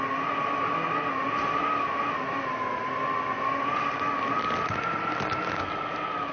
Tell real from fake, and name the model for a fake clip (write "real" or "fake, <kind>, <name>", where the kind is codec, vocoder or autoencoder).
real